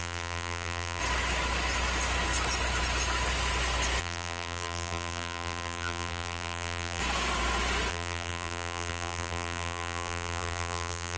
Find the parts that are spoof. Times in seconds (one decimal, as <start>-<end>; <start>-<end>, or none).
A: 0.0-1.0; 4.0-7.0; 7.9-11.2